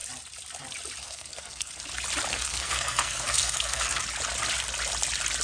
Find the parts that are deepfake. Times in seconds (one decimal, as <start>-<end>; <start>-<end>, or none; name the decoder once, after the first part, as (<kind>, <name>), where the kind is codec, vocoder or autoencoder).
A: 1.0-1.7 (codec, SNAC); 2.3-4.0